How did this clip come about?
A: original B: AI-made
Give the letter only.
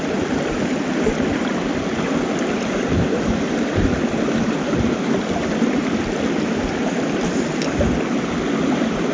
A